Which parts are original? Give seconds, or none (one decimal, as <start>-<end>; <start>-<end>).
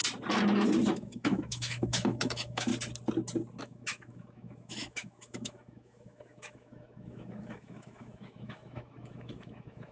0.0-0.9; 2.7-3.6